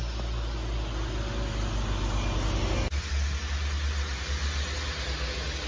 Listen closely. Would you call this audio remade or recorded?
recorded